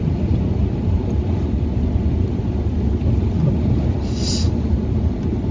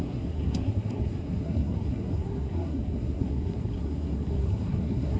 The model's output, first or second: second